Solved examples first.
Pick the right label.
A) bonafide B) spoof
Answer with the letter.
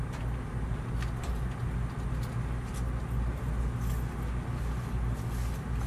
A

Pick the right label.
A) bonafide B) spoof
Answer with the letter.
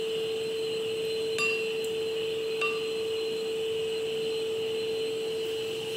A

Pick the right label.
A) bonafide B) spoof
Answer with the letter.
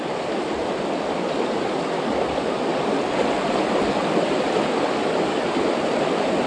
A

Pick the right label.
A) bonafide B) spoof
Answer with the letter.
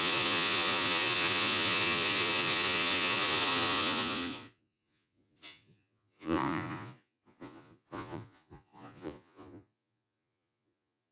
B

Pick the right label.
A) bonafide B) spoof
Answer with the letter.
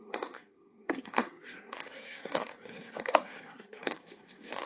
B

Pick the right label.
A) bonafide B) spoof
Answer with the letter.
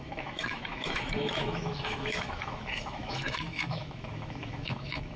B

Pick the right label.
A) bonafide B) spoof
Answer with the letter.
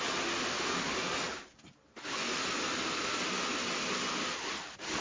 A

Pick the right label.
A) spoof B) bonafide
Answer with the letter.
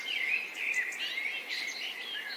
B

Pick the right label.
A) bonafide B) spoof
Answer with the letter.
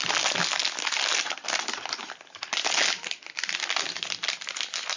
A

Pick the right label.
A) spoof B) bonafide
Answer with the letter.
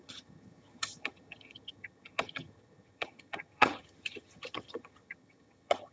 A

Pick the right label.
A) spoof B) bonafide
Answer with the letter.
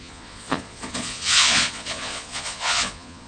A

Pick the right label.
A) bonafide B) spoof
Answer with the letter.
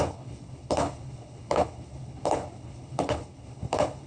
B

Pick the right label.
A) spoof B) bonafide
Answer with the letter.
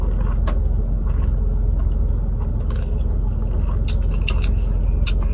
B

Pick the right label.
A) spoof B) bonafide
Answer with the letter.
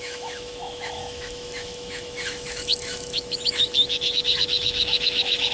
A